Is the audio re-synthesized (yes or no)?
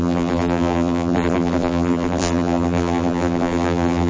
yes